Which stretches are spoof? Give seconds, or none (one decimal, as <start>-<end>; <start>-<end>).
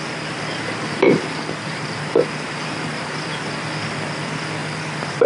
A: 0.5-3.4; 4.6-5.3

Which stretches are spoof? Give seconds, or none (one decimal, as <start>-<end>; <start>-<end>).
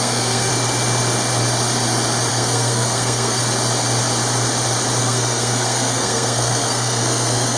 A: 0.0-0.5; 2.3-3.4; 5.0-7.6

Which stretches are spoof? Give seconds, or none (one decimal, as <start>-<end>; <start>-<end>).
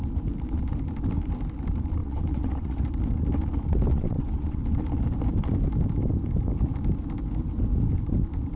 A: 2.0-2.8; 3.9-4.6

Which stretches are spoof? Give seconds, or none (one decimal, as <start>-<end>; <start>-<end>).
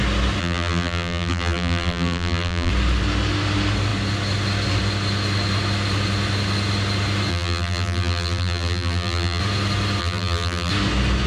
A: 0.4-2.7; 7.3-9.4; 10.0-10.7